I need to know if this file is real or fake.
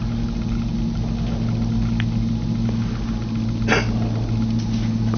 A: real